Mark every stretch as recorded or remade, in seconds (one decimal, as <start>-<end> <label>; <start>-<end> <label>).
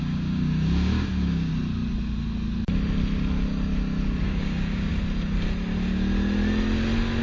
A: 0.0-1.5 remade; 1.5-4.2 recorded; 4.2-4.9 remade; 4.9-7.2 recorded